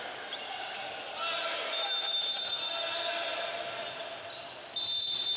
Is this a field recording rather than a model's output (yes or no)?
yes